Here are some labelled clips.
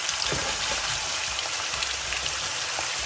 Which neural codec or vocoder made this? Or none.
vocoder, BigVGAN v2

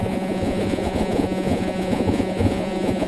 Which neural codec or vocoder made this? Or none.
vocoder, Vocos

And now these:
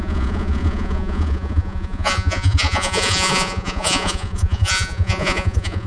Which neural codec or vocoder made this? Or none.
vocoder, Vocos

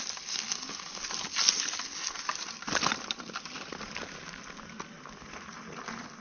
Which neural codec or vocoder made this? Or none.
none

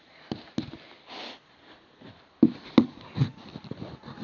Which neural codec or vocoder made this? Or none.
none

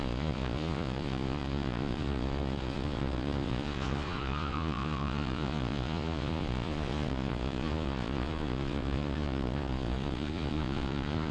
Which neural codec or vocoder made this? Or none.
vocoder, Vocos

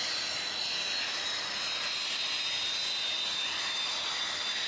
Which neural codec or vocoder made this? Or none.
none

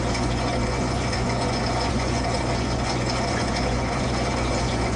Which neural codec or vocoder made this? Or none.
vocoder, Vocos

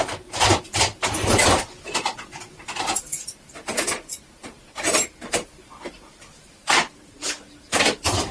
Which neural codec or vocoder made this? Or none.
none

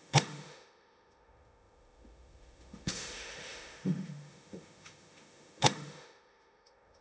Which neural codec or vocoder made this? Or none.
autoencoder, DAC-VAE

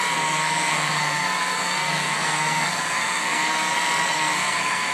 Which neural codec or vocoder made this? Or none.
codec, SNAC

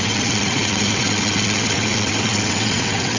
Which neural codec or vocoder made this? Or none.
vocoder, WaveNeXt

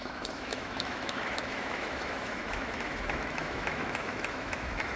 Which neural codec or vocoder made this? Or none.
autoencoder, DAC-VAE